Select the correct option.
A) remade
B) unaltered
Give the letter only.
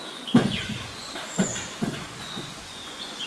A